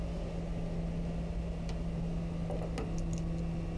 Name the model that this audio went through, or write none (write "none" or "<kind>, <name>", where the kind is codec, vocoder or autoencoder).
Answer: none